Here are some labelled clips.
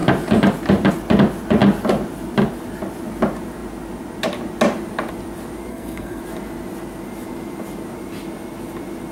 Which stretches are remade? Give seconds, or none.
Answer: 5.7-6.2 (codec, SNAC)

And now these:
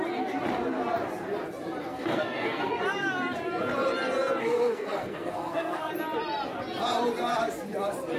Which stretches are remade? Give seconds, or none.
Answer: 1.8-2.8 (codec, SNAC); 4.4-5.9

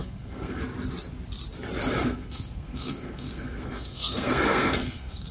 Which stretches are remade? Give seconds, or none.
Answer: 0.0-0.6 (codec, SNAC); 2.0-5.3

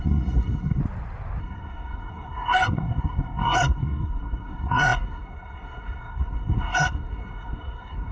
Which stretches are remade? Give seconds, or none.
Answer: 0.0-0.8 (codec, SNAC); 1.4-8.1

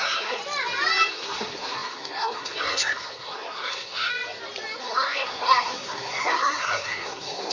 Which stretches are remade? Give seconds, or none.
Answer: 0.0-0.4 (codec, SNAC); 1.1-4.1; 4.8-7.5

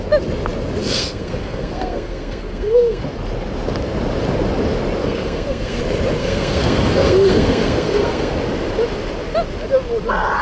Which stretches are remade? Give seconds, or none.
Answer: 0.8-3.0 (codec, SNAC); 5.0-5.8; 6.2-8.3

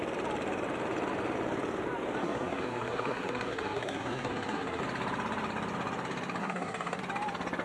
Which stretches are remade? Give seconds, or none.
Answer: 2.2-4.8 (codec, SNAC); 6.4-7.0

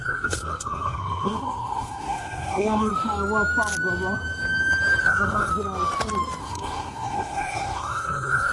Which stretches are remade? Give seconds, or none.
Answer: 0.0-2.9 (codec, SNAC); 5.0-5.5; 6.4-8.5